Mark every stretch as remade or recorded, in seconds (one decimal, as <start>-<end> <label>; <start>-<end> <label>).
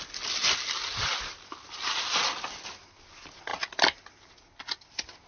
0.0-5.3 recorded